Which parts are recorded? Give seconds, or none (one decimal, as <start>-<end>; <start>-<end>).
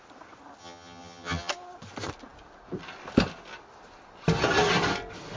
0.0-0.6; 1.5-5.4